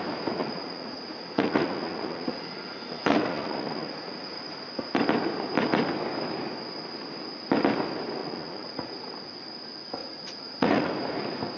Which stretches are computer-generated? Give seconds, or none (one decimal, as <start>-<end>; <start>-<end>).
0.4-4.4; 8.2-9.1; 10.0-10.9